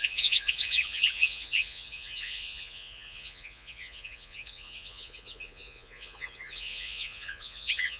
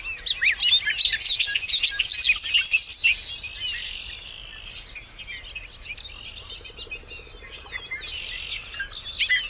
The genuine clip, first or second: second